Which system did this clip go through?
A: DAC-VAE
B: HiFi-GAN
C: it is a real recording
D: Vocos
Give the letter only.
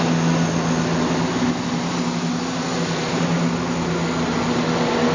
C